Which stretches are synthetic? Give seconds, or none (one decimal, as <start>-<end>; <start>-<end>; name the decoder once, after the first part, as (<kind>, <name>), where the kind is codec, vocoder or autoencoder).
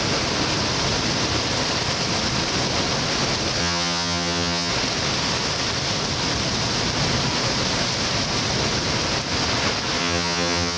3.6-4.7 (vocoder, HiFi-GAN); 10.0-10.8